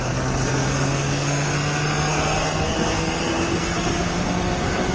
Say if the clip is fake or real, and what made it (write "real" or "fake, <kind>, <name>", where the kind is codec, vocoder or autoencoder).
fake, codec, SNAC